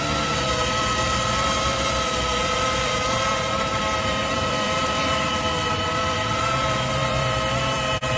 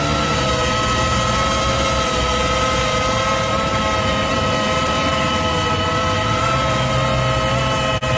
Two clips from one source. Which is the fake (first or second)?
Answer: first